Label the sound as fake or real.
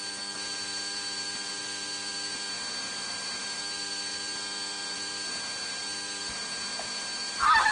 fake